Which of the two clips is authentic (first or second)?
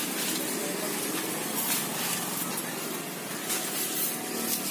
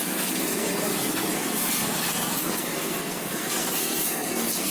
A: first